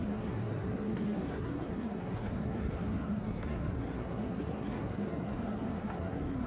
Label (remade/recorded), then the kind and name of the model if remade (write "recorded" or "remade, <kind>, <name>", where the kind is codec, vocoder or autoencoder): remade, codec, SNAC